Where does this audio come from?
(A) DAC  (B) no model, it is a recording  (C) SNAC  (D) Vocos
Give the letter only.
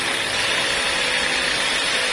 B